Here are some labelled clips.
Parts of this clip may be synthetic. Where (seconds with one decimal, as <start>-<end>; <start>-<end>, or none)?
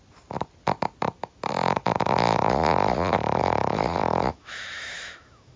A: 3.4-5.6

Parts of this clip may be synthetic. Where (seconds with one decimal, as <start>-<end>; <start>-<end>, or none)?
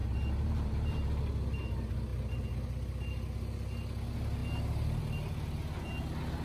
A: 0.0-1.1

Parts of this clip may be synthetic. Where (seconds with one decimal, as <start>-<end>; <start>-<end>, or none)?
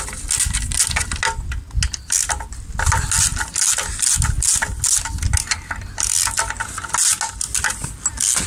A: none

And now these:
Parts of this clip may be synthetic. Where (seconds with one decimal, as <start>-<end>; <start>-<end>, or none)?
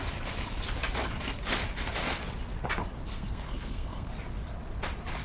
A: 3.1-4.1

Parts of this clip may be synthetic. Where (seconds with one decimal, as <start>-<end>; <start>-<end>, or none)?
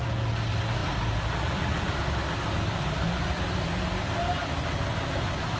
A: none